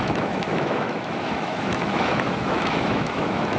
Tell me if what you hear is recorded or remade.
remade